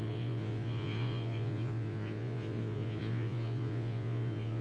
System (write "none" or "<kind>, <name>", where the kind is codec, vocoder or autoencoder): vocoder, Vocos